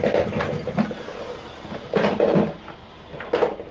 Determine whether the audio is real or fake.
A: real